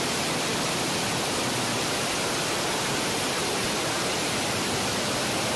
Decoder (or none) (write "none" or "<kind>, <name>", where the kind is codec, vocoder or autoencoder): vocoder, BigVGAN v2